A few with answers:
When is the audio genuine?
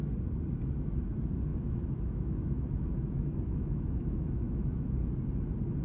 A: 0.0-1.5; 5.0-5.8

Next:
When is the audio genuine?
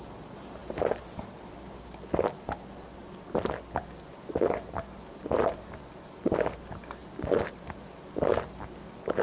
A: 0.0-9.2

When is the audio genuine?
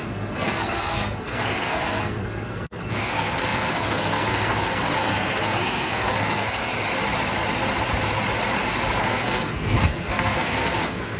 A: 6.6-9.0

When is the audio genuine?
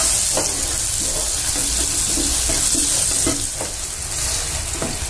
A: 0.0-5.1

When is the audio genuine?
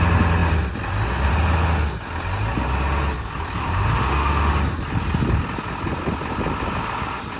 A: 0.0-3.6; 4.5-7.4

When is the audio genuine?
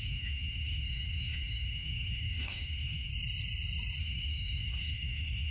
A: 3.1-4.0